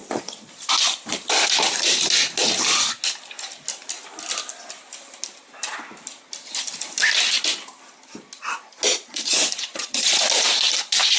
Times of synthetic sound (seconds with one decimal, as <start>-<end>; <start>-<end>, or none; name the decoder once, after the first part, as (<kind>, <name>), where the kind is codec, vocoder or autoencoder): 0.0-0.5 (vocoder, Vocos); 8.9-10.2